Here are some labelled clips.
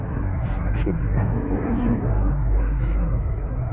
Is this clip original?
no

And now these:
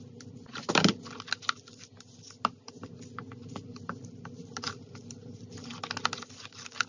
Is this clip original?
yes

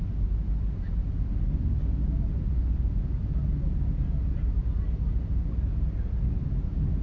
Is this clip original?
yes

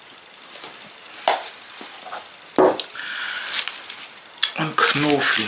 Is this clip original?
yes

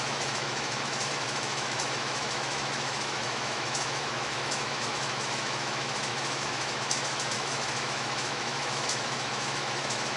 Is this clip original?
no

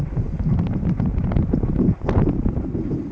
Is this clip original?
yes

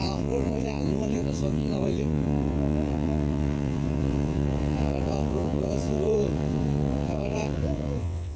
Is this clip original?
no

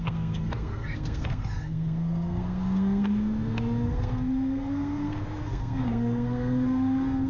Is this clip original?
no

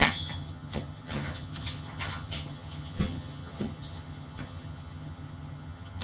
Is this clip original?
no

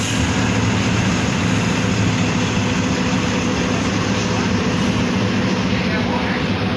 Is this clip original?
yes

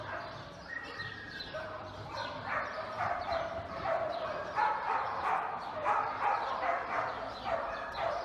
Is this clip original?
no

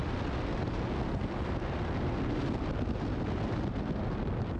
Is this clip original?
yes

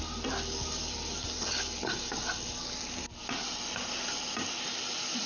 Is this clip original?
yes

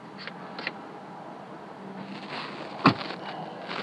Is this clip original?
yes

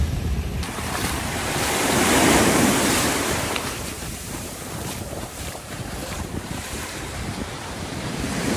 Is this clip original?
no